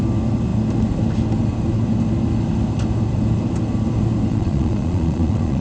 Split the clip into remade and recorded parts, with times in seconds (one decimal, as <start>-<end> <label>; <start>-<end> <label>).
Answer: 0.0-4.3 recorded; 4.3-5.6 remade